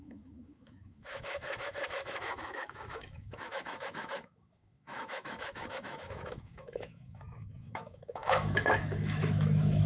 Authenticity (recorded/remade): remade